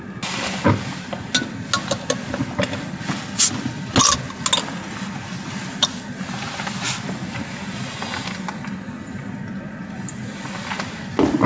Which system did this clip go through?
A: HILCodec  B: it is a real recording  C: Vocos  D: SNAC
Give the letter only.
B